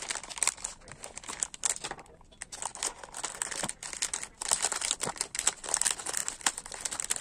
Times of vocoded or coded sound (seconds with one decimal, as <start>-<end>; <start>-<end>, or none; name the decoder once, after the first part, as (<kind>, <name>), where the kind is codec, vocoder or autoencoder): none